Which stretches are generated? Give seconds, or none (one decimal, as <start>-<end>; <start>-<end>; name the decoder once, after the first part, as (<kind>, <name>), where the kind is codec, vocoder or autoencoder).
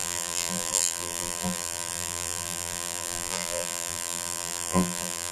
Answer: 0.0-5.3 (vocoder, BigVGAN v2)